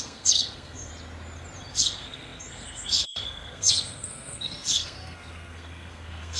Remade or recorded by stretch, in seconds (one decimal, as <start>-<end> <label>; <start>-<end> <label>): 0.0-0.9 remade; 0.9-1.7 recorded; 1.7-6.4 remade